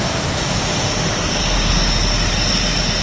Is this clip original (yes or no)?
yes